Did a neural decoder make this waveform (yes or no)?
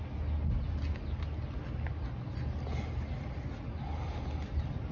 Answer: no